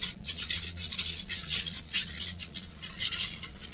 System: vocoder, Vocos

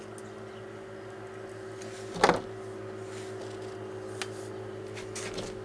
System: none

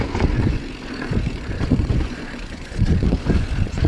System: vocoder, Vocos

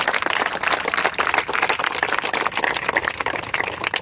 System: none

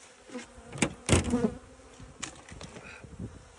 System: none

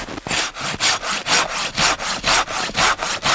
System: none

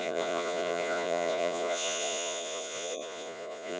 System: vocoder, Vocos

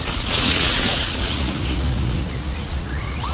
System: vocoder, Vocos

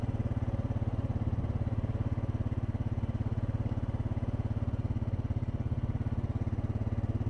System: none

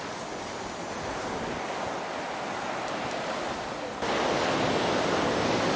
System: none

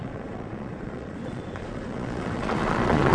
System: vocoder, Vocos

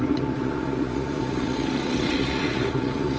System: vocoder, Vocos